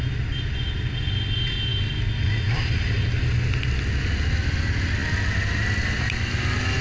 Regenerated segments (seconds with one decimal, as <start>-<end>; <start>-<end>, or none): none